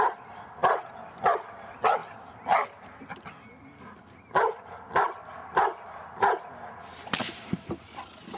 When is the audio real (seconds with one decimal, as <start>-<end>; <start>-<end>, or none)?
0.0-8.4